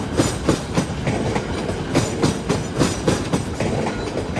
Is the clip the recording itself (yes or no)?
yes